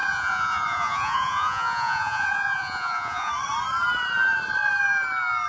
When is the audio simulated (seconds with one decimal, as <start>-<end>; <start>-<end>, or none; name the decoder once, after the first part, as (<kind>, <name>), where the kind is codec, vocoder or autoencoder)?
0.0-3.3 (vocoder, Vocos)